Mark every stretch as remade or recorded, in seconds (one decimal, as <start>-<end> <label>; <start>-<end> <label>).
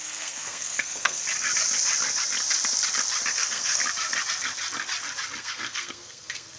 0.0-1.2 remade; 1.2-3.3 recorded; 3.3-3.8 remade; 3.8-5.4 recorded; 5.4-6.6 remade